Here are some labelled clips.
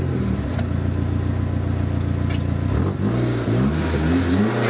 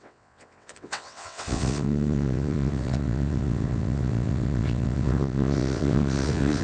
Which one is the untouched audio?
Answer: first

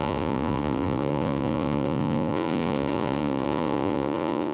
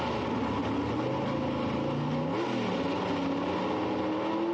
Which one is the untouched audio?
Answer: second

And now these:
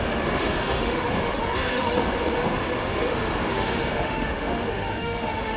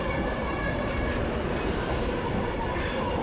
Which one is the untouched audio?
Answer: second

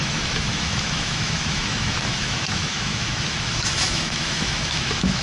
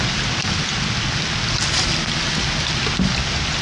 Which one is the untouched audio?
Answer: second